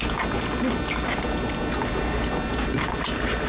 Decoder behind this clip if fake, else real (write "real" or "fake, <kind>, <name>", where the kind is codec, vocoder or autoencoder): real